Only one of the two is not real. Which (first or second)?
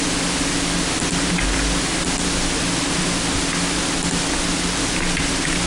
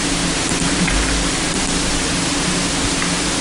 second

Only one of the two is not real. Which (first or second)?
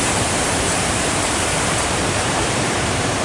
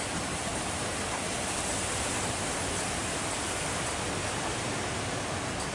first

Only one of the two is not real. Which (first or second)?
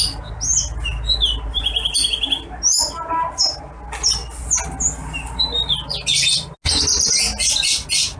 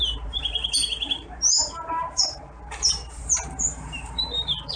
second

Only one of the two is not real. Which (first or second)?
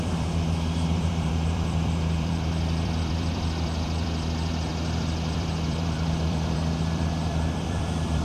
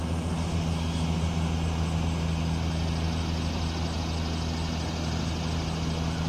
first